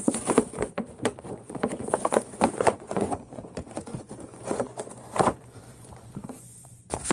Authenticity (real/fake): fake